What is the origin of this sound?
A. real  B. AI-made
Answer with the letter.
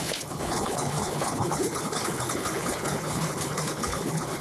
B